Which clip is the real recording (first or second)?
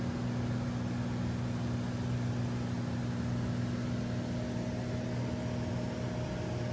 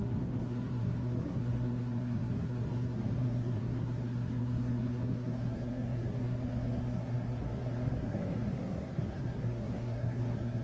first